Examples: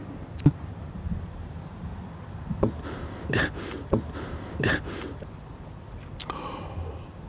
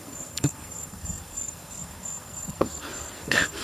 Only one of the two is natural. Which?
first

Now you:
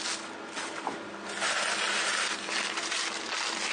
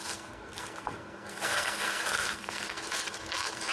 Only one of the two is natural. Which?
first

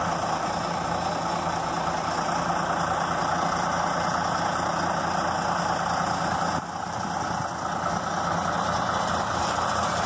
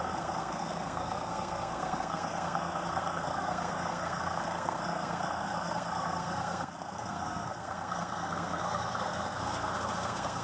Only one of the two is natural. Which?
first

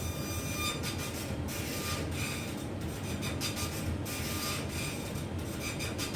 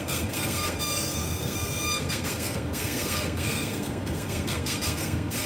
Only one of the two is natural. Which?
first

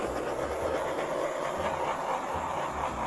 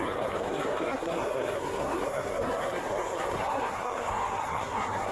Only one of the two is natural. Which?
first